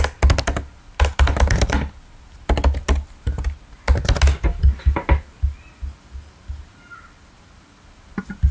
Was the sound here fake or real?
real